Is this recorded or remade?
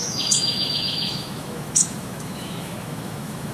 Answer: remade